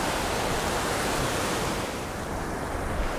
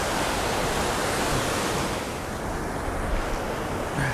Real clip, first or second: second